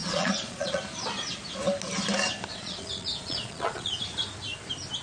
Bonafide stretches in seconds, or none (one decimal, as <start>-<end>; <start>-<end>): 0.8-2.5; 3.9-5.0